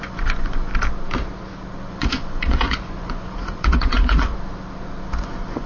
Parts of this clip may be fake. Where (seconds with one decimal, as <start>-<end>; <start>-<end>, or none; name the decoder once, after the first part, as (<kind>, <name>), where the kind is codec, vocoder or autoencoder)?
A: 0.0-0.7 (vocoder, Vocos); 1.9-4.3; 5.2-5.7